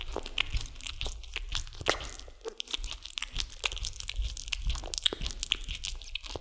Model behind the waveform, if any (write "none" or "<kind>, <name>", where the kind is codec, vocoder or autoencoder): none